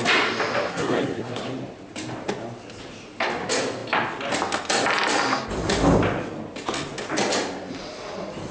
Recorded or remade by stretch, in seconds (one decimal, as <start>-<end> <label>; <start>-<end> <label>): 0.0-0.7 recorded; 0.7-1.4 remade; 1.4-8.5 recorded